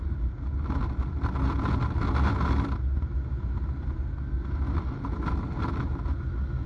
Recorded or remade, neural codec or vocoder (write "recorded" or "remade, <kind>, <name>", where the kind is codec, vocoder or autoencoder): recorded